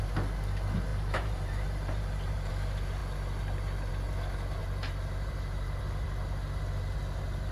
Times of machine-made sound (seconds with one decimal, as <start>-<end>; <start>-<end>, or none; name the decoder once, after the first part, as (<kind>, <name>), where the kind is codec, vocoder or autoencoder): 0.9-2.5 (vocoder, BigVGAN v2); 4.6-5.8